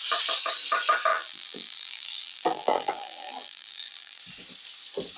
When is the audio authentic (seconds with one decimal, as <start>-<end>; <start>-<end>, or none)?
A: 0.0-1.1; 4.2-5.2